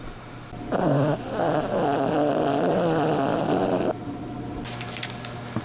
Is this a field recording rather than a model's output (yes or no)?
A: yes